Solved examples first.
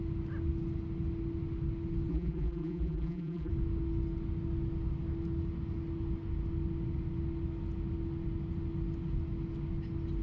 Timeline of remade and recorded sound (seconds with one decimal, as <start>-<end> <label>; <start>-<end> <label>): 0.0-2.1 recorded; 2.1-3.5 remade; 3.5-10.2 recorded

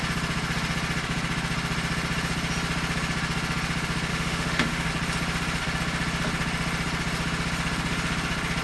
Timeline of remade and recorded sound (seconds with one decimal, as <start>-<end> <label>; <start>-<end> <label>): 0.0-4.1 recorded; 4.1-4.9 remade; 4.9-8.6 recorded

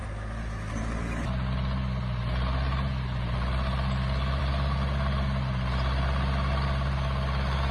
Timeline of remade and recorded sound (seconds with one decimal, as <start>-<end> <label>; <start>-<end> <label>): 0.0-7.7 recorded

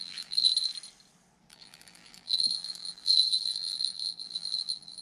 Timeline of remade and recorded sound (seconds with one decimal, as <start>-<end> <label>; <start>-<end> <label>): 0.0-0.5 remade; 0.5-1.5 recorded; 1.5-5.0 remade

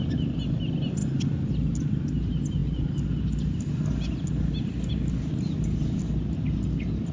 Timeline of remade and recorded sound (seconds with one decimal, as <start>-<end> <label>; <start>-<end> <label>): 0.0-7.1 recorded

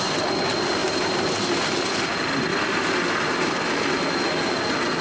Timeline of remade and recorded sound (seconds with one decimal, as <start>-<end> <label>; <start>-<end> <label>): 0.0-0.8 recorded; 0.8-1.4 remade; 1.4-2.5 recorded; 2.5-3.7 remade; 3.7-5.0 recorded